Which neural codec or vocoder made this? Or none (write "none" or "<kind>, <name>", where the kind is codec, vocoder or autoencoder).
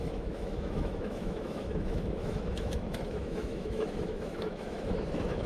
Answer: autoencoder, DAC-VAE